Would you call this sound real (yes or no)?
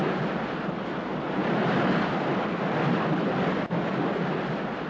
yes